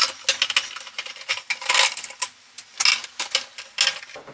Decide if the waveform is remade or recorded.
recorded